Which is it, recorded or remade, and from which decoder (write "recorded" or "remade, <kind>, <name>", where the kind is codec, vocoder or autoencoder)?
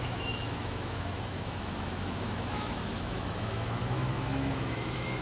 remade, autoencoder, DAC-VAE